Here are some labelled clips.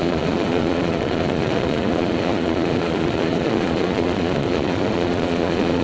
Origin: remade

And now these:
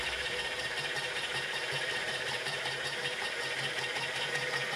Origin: remade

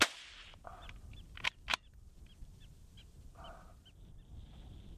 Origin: recorded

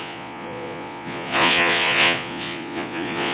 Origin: remade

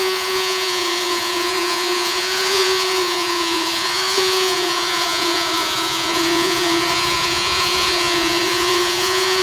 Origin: remade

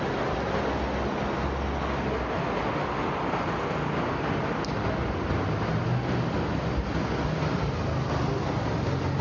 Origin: recorded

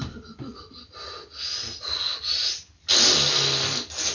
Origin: recorded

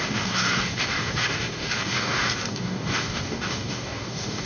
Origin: remade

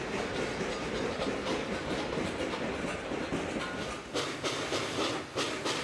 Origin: recorded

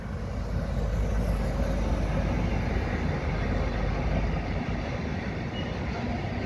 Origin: recorded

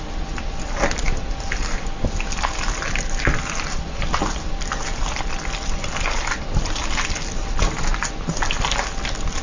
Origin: recorded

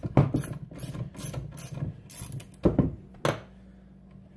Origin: recorded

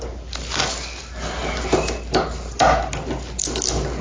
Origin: recorded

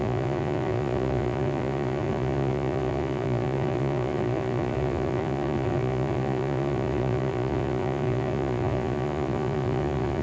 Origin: remade